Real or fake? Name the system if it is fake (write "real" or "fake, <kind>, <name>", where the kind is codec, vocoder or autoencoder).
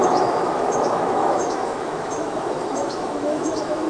fake, autoencoder, DAC-VAE